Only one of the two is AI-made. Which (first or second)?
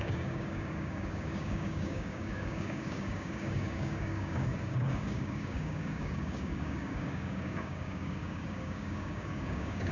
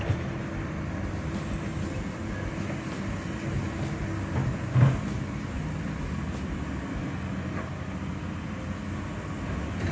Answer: first